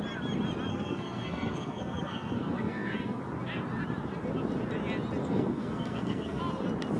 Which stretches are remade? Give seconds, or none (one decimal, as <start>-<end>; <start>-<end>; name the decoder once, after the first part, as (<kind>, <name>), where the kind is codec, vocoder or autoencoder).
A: 0.7-3.2 (codec, SNAC); 5.2-6.4